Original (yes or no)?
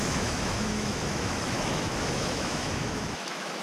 no